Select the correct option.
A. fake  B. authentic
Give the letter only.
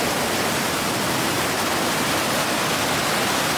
B